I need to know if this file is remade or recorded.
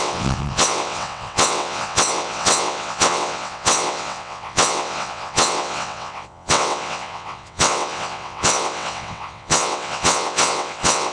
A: remade